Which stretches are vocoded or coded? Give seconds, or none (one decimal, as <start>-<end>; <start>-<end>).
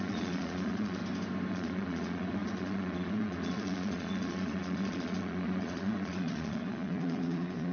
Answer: 0.0-1.0; 1.5-7.7